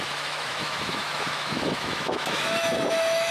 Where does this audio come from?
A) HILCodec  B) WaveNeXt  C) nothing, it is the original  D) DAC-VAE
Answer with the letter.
D